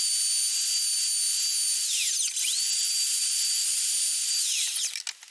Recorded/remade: recorded